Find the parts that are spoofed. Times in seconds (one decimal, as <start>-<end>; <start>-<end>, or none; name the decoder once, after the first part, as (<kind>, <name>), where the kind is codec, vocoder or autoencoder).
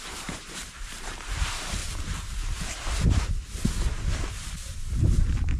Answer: 0.0-1.8 (vocoder, BigVGAN v2); 4.3-5.6